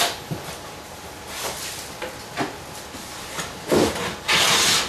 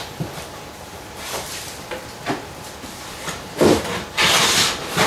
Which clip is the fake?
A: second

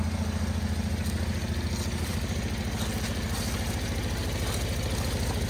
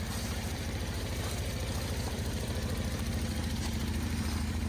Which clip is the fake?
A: second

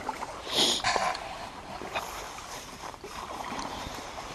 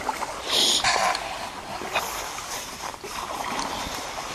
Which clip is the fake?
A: first